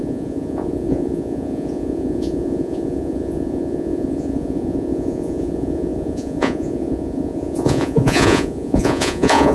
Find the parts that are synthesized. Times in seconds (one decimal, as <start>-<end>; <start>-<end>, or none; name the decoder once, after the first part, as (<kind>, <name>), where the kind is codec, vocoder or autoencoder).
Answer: 0.0-9.5 (vocoder, Vocos)